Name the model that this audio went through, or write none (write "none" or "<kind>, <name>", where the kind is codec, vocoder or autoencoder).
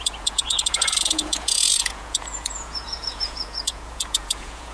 vocoder, Vocos